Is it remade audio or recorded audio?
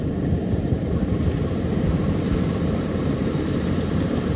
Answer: remade